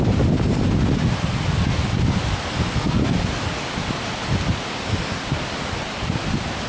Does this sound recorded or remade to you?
recorded